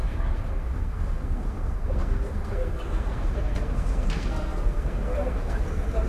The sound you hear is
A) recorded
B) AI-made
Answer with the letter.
B